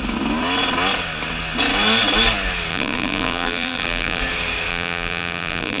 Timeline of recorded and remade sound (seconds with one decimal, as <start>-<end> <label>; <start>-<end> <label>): 0.0-2.7 recorded; 2.7-4.2 remade; 4.2-4.7 recorded; 4.7-5.8 remade